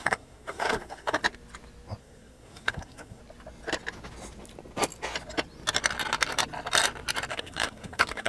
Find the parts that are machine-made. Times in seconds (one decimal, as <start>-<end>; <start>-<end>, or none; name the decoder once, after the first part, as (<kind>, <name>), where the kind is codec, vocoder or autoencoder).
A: 0.0-1.2 (codec, SNAC); 2.0-3.2; 7.3-8.3